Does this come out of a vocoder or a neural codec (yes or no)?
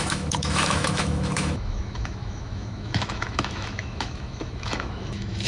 yes